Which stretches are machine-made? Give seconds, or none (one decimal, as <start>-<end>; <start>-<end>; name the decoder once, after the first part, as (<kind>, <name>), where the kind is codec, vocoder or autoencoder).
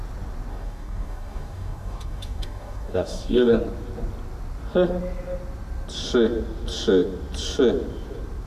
0.5-3.6 (codec, DAC)